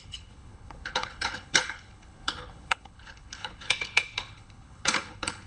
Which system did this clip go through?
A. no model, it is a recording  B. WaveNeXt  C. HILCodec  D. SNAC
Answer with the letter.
C